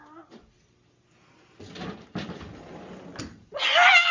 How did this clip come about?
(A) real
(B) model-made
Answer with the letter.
A